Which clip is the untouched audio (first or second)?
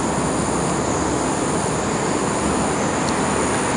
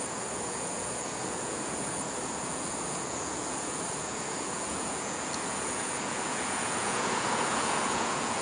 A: first